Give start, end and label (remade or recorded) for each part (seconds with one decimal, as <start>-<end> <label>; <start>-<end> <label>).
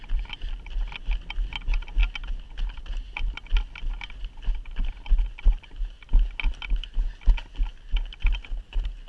0.0-9.1 recorded